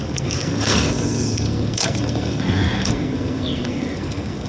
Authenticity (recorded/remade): remade